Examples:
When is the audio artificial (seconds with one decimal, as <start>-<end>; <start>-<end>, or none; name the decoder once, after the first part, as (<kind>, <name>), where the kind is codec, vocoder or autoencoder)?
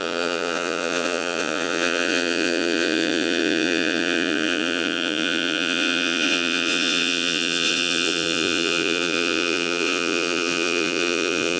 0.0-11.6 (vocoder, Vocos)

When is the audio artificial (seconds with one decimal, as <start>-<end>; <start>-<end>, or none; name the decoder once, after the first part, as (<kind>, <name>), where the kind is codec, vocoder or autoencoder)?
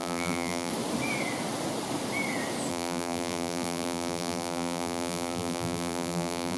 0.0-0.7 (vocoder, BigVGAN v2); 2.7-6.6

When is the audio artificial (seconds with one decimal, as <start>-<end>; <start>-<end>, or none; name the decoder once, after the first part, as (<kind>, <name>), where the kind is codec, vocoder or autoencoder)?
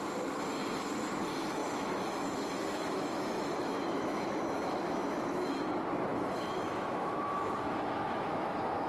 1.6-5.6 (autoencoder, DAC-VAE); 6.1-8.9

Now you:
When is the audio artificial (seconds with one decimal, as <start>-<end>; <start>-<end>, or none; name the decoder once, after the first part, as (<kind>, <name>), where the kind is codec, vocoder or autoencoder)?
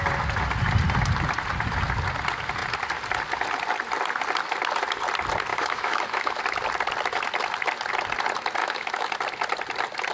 5.5-6.4 (autoencoder, DAC-VAE); 8.6-9.1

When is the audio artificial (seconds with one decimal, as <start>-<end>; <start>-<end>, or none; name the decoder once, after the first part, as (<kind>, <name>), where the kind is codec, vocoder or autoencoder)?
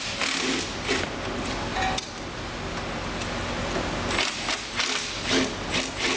none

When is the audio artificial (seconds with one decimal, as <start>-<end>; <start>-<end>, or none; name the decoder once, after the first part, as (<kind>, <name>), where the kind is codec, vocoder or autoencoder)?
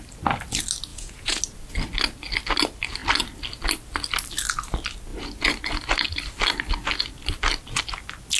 0.9-1.4 (vocoder, Vocos)